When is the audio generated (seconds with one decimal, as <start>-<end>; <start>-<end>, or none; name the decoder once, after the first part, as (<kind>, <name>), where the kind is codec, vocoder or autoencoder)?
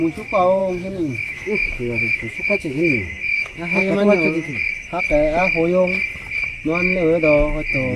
0.6-5.0 (autoencoder, DAC-VAE)